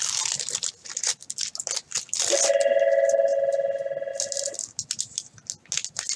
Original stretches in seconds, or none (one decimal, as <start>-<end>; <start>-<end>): 0.0-6.2